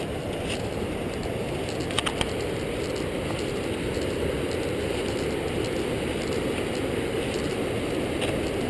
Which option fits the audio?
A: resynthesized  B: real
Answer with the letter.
B